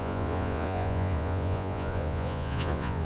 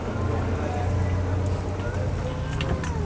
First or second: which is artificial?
first